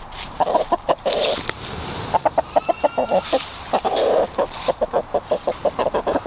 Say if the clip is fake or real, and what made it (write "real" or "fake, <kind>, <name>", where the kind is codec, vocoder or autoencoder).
fake, vocoder, BigVGAN v2